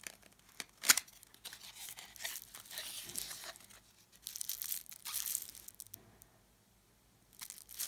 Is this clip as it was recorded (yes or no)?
yes